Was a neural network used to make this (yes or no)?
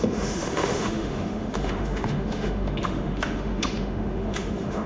yes